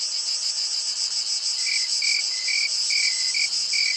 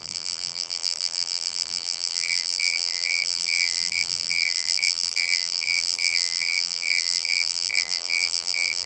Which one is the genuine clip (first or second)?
first